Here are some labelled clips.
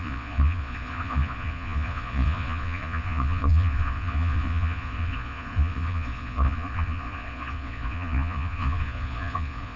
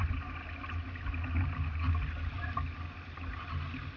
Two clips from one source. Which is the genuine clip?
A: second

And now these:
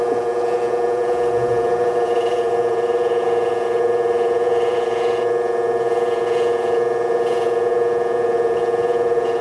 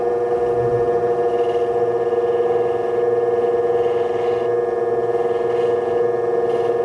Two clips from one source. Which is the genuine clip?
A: second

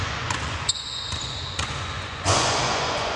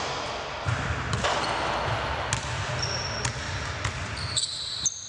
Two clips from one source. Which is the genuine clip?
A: second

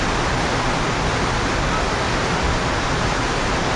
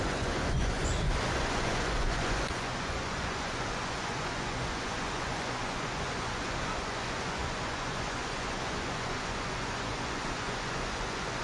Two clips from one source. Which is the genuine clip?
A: first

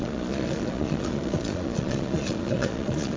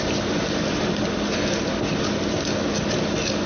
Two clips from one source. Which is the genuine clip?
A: second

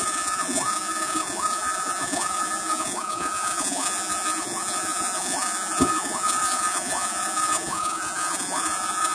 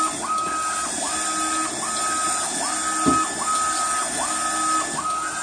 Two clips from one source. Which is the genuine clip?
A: second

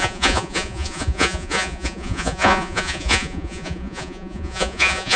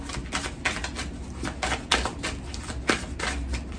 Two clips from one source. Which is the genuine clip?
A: second